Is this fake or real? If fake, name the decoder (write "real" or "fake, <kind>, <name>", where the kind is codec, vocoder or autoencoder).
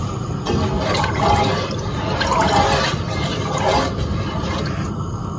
real